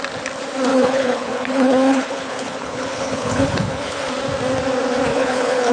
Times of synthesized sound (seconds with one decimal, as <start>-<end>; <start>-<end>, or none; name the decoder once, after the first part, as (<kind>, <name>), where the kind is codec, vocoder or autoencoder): 0.7-4.1 (codec, HILCodec); 5.1-5.7